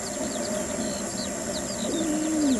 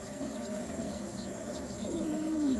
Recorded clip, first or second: first